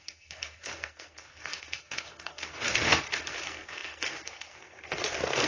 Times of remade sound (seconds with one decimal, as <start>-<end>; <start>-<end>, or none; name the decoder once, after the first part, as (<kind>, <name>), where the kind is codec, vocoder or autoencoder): 0.0-5.5 (codec, SNAC)